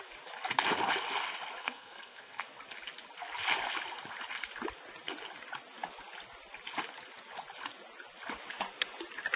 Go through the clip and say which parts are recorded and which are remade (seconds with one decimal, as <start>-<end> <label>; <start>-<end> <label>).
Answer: 0.0-1.6 recorded; 1.6-2.4 remade; 2.4-9.4 recorded